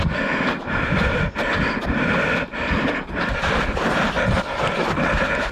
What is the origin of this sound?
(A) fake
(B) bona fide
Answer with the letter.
B